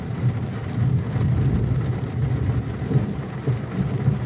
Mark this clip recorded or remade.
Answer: recorded